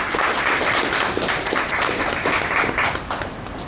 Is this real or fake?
fake